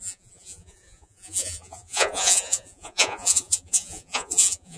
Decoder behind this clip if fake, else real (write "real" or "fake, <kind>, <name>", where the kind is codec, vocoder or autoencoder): fake, vocoder, Vocos